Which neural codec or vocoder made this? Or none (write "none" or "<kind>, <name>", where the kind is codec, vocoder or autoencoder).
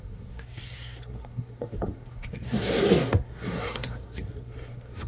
codec, SNAC